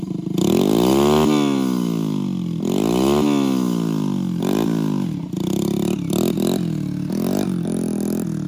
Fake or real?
real